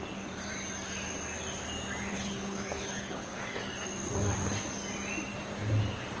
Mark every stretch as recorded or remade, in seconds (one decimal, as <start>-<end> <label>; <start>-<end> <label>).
0.0-2.1 recorded; 2.1-3.4 remade; 3.4-6.2 recorded